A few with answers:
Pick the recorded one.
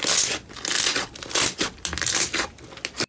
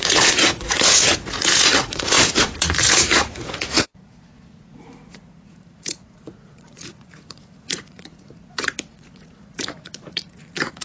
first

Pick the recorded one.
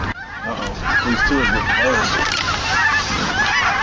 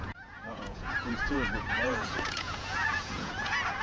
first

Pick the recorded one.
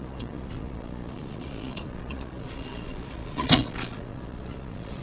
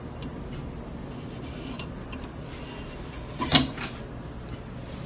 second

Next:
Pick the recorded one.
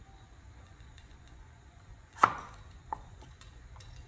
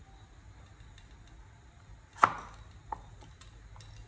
second